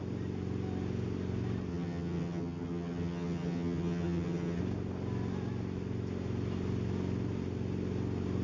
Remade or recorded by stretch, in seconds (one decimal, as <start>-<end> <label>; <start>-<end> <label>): 0.0-1.7 recorded; 1.7-4.6 remade; 4.6-8.4 recorded